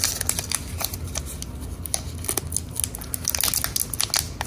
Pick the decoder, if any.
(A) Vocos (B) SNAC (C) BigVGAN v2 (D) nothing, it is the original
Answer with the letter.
D